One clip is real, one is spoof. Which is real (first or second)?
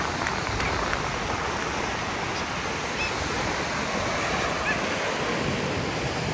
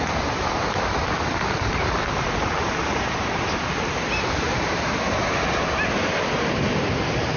first